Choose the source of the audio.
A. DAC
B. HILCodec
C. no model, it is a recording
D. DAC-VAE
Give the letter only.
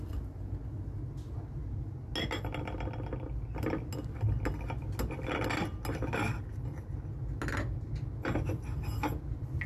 C